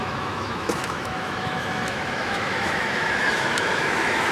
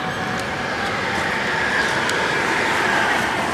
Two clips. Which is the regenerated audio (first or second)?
first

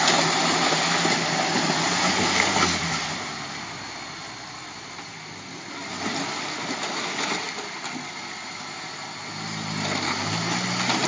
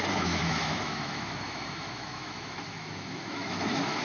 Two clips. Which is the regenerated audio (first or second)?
second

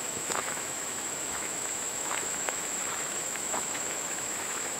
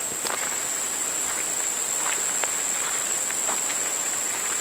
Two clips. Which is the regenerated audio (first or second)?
first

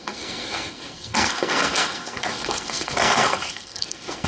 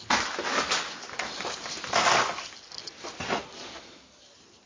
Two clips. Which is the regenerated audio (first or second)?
first